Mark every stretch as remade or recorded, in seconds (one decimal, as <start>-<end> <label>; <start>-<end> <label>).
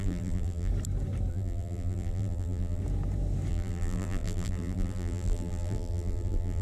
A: 0.0-0.7 remade; 0.7-1.3 recorded; 1.3-2.8 remade; 2.8-3.5 recorded; 3.5-6.6 remade